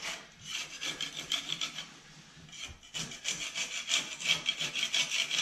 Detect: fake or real real